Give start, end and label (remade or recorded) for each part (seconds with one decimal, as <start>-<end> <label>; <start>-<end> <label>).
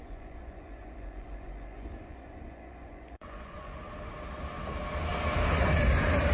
0.0-3.8 remade; 3.8-6.3 recorded